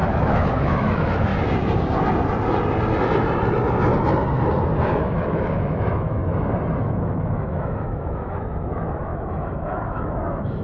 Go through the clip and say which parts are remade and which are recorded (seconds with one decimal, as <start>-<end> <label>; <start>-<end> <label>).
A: 0.0-1.3 remade; 1.3-5.0 recorded; 5.0-6.2 remade; 6.2-6.8 recorded; 6.8-10.6 remade